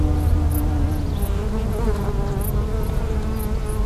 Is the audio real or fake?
real